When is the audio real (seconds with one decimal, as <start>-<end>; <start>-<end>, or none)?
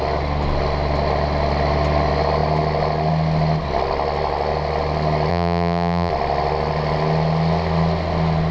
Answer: 0.0-5.3; 6.1-8.5